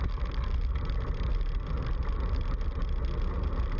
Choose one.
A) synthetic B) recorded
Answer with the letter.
B